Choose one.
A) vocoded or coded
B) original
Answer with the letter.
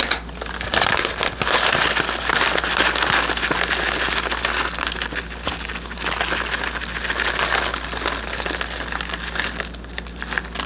B